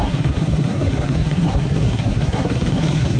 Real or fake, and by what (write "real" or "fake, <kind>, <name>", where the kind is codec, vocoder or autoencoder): fake, codec, SNAC